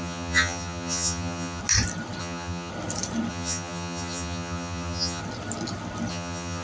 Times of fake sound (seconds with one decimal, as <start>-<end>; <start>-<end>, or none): 0.0-1.6; 2.2-2.7; 3.3-5.2; 6.1-6.6